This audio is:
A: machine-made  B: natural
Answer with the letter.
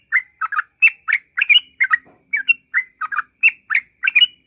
A